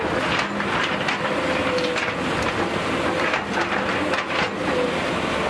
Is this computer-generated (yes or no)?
no